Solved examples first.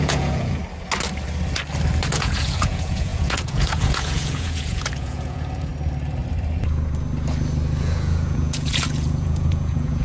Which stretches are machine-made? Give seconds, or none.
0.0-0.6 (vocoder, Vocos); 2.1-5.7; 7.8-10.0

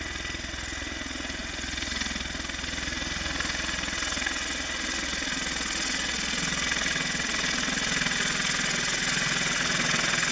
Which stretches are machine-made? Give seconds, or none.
none

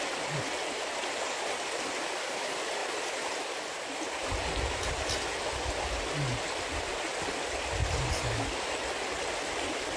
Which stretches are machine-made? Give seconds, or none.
none